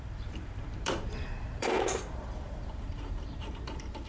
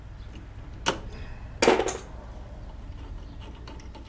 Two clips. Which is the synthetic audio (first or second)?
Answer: first